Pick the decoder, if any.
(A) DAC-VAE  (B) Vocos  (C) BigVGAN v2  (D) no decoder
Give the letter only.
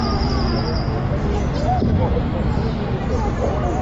D